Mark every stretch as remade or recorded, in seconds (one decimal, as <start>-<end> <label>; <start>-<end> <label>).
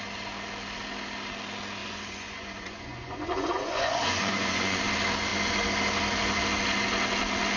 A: 0.0-1.8 recorded; 1.8-4.8 remade; 4.8-7.6 recorded